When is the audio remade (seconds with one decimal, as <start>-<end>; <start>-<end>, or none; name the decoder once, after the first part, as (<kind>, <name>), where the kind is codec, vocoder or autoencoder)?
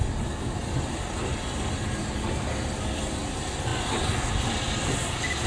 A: none